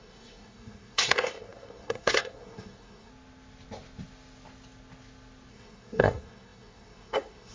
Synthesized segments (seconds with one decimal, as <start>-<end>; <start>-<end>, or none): 0.0-3.1; 5.5-7.5